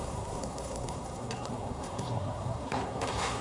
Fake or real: fake